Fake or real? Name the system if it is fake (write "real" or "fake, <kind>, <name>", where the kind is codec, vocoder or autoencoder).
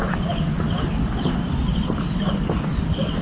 real